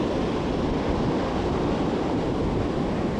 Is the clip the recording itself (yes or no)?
yes